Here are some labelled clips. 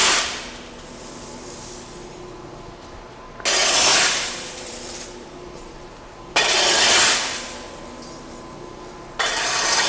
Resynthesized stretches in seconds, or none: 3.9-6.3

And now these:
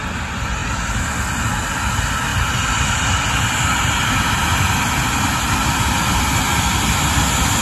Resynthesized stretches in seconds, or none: none